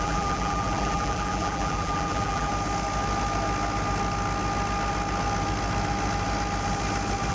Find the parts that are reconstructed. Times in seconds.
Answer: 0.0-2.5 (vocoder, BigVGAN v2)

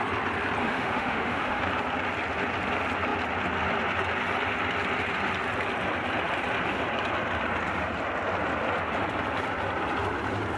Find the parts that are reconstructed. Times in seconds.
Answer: 0.6-1.6 (autoencoder, DAC-VAE)